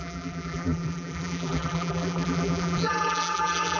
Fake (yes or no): yes